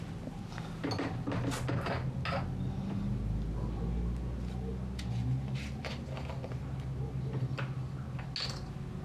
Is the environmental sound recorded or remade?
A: recorded